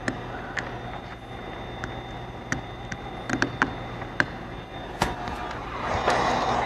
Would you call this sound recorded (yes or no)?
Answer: yes